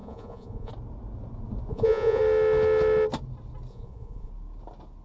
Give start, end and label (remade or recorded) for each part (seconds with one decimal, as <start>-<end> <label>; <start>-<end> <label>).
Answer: 0.0-0.7 remade; 0.7-1.7 recorded; 1.7-2.2 remade; 2.2-3.7 recorded; 3.7-4.3 remade; 4.3-5.0 recorded